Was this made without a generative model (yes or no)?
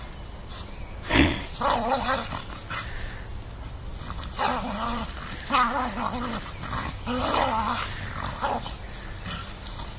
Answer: yes